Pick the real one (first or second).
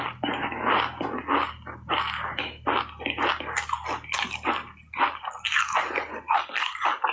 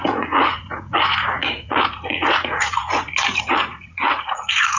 first